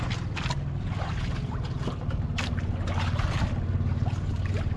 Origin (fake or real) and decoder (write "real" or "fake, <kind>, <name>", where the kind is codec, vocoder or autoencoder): real